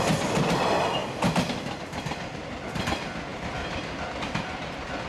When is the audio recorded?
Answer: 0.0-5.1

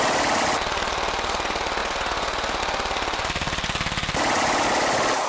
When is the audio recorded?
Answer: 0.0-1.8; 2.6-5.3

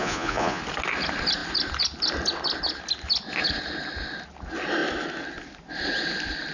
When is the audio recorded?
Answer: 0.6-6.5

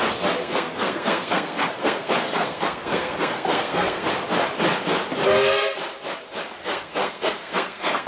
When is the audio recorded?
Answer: 0.0-0.4; 4.1-6.6